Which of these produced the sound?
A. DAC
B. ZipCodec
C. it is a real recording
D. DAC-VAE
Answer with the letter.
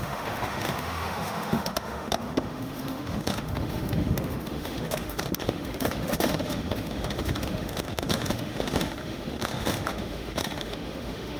D